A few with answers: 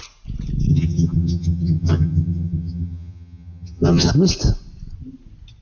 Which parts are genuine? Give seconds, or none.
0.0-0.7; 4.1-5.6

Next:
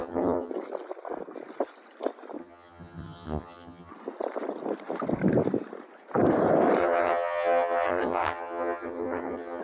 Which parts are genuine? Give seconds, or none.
0.5-2.4; 3.9-6.8

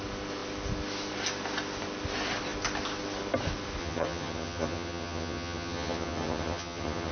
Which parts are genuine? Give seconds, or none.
0.0-3.8